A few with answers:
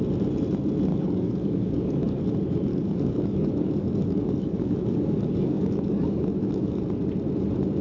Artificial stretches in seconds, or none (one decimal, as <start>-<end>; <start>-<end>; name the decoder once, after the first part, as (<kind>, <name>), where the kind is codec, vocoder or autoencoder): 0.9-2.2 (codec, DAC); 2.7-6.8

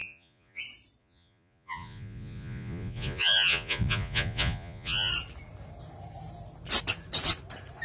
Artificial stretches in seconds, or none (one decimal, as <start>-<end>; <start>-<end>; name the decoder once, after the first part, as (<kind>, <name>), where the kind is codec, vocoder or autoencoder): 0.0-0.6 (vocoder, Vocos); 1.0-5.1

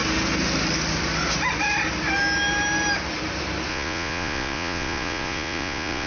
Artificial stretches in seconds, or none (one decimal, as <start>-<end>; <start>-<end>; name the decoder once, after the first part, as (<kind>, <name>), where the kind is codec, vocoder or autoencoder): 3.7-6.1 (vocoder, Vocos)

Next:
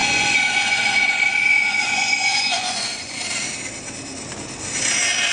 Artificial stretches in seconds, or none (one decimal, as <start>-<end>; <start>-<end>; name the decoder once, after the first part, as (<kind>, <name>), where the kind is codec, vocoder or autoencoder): 0.0-3.2 (vocoder, Vocos)

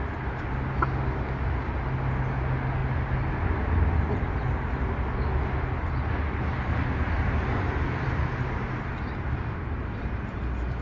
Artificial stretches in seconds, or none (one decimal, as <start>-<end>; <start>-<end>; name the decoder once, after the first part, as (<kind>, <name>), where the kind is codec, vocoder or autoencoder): none